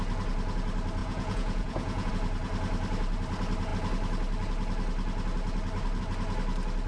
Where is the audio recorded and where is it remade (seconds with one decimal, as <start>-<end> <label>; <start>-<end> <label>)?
0.0-1.0 recorded; 1.0-2.1 remade; 2.1-6.9 recorded

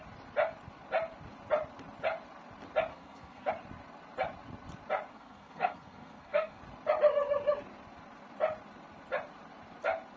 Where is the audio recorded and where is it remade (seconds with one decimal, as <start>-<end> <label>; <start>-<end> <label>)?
0.0-2.9 recorded; 2.9-3.5 remade; 3.5-5.1 recorded; 5.1-6.6 remade; 6.6-10.2 recorded

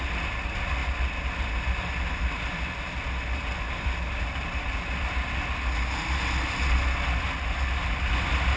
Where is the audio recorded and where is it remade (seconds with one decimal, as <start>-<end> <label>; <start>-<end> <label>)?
0.0-8.6 recorded

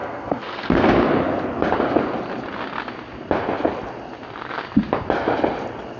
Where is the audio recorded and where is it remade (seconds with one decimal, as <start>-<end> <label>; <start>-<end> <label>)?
0.0-0.9 remade; 0.9-6.0 recorded

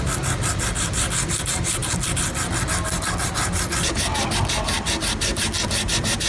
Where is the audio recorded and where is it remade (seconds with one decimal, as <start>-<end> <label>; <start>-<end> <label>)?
0.0-6.3 recorded

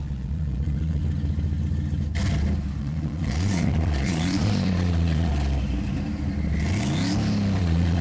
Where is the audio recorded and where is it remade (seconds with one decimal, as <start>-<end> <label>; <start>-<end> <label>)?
0.0-1.0 remade; 1.0-2.8 recorded; 2.8-5.3 remade; 5.3-7.6 recorded; 7.6-8.0 remade